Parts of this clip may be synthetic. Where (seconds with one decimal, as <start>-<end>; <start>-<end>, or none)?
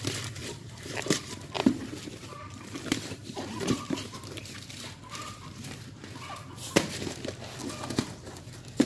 0.4-1.9; 3.2-6.0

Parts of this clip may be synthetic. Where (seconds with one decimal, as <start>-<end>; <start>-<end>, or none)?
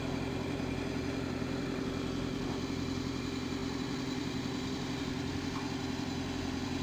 0.0-6.8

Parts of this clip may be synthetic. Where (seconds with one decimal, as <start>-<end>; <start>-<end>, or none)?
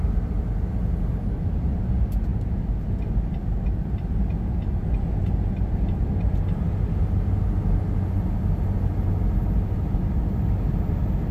none